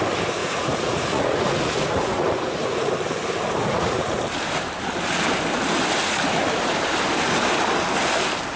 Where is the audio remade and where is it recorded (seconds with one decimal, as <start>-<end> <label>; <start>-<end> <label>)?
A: 0.0-0.4 recorded; 0.4-2.9 remade; 2.9-3.6 recorded; 3.6-4.2 remade; 4.2-8.6 recorded